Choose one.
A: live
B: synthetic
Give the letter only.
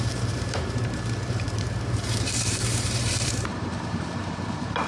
B